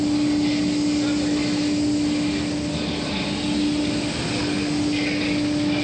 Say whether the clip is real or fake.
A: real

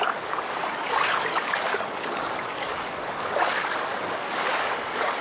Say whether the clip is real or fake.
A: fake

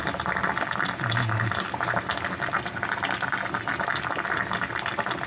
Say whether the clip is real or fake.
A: real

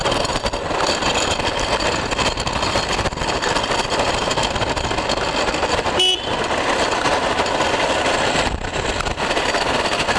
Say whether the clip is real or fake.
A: real